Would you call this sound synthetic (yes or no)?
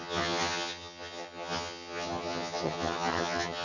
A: yes